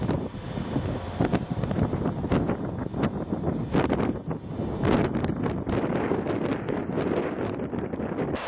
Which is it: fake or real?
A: real